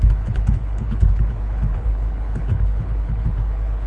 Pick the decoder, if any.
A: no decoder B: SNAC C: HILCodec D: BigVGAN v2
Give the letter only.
C